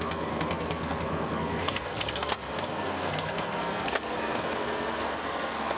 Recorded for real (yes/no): no